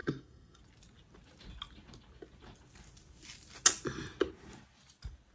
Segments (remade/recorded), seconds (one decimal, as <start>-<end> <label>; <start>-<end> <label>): 0.0-0.6 remade; 0.6-5.3 recorded